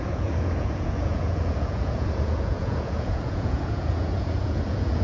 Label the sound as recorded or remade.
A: remade